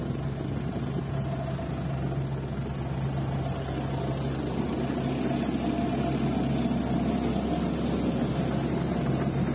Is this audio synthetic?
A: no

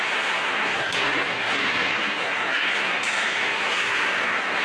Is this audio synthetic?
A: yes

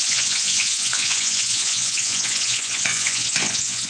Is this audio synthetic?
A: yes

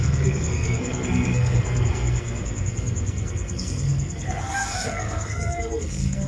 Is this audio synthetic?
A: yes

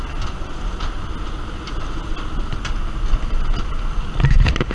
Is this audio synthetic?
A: no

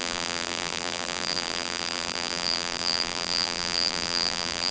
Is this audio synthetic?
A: yes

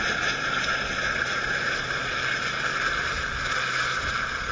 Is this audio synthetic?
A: no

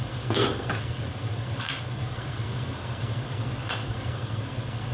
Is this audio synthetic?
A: yes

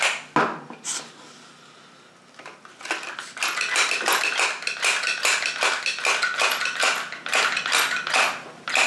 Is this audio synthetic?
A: no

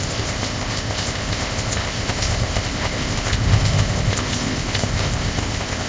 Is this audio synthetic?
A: yes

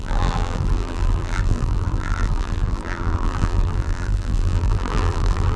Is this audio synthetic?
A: yes